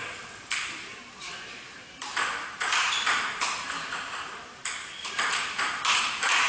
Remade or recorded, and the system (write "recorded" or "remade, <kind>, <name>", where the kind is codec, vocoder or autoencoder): remade, vocoder, BigVGAN v2